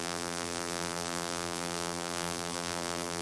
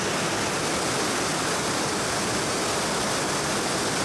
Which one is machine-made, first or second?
first